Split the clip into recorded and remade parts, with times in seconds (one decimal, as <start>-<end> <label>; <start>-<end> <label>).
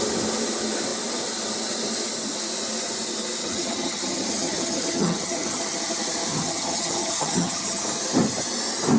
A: 0.0-3.4 recorded; 3.4-5.6 remade; 5.6-6.3 recorded; 6.3-7.8 remade; 7.8-9.0 recorded